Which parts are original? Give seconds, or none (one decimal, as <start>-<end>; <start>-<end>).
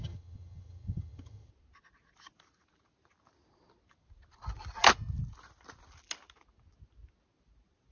1.5-7.9